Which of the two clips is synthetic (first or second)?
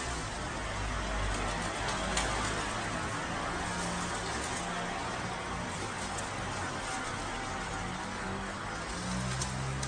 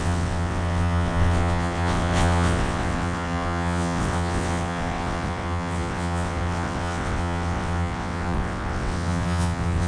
second